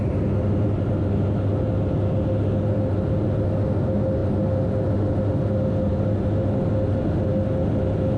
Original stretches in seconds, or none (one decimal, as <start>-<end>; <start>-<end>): 0.0-8.2

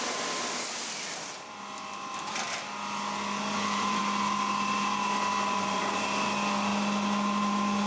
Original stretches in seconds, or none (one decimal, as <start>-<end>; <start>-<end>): 0.0-3.4; 4.0-5.3; 6.0-7.9

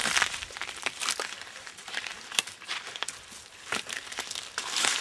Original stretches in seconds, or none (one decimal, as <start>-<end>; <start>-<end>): 0.0-1.5; 2.1-4.6